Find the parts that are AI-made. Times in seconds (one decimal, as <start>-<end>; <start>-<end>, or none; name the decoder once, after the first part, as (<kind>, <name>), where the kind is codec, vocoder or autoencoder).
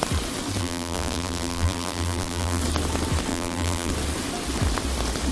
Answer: 0.6-2.6 (vocoder, BigVGAN v2); 3.3-3.9